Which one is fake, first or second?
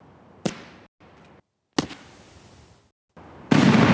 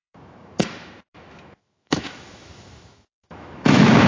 second